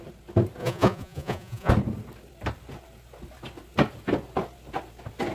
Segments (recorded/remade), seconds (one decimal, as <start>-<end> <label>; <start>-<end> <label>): 0.0-0.6 recorded; 0.6-1.7 remade; 1.7-5.3 recorded